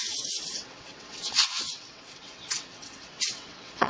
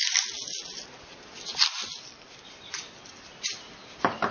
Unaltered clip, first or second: second